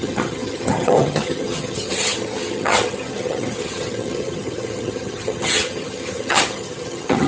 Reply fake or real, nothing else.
fake